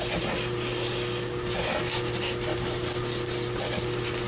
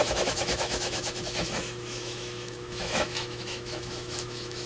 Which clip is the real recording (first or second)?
first